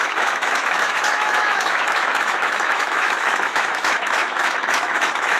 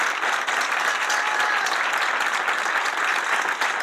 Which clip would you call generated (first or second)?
first